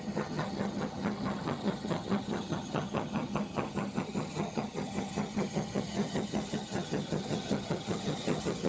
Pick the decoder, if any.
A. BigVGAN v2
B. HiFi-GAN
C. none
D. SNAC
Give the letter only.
B